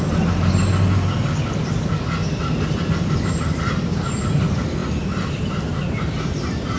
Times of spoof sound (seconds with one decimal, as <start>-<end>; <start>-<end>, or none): none